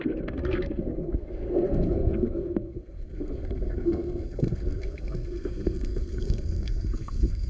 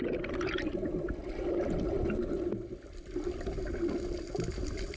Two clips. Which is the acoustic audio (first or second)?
second